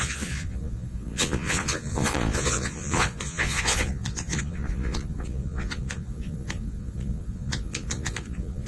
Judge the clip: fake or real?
fake